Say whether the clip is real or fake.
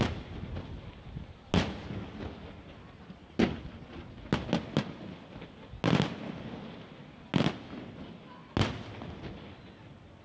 real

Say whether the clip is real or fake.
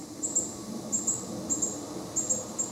real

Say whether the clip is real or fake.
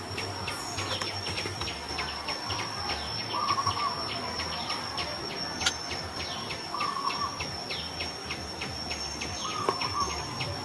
real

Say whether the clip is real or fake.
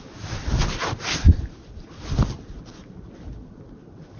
real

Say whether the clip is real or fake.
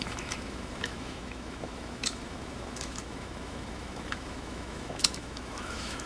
fake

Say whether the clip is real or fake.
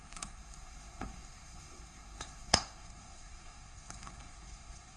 fake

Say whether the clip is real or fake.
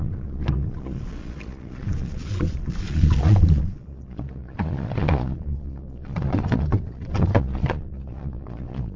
fake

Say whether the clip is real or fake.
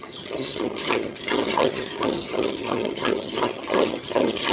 fake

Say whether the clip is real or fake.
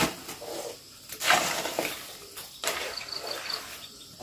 real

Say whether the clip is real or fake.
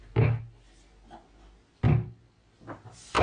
real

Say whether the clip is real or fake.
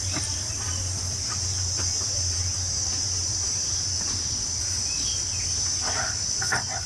real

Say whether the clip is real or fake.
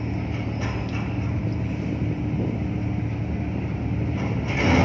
real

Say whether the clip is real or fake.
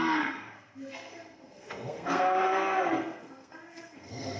fake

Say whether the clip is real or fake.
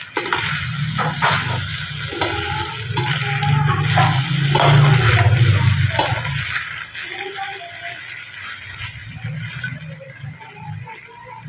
real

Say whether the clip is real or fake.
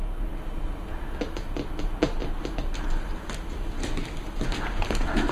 real